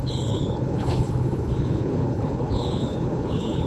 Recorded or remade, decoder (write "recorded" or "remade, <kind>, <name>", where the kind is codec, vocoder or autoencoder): remade, codec, HILCodec